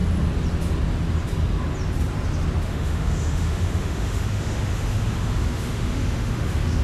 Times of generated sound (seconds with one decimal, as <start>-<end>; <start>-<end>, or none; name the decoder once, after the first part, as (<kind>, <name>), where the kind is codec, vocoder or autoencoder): 2.7-6.8 (autoencoder, DAC-VAE)